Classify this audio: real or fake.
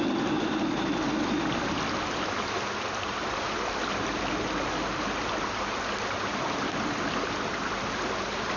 real